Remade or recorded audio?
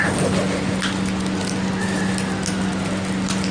recorded